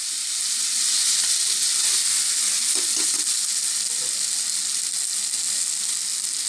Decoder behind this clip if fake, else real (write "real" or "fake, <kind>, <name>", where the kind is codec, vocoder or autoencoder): real